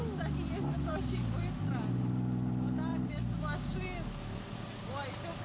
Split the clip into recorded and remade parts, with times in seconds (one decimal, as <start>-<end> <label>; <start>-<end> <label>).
0.0-5.4 recorded